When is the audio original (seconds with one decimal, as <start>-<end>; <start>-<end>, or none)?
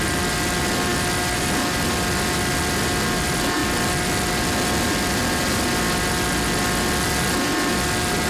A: 0.0-8.3